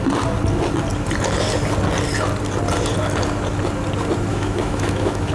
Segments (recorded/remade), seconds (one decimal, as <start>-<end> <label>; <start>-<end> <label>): 0.0-4.3 recorded; 4.3-5.3 remade